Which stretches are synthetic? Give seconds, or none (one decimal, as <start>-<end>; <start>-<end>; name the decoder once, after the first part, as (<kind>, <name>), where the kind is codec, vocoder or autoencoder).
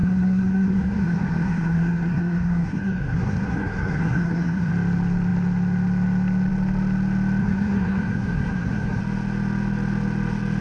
0.0-4.7 (codec, SNAC); 7.4-9.0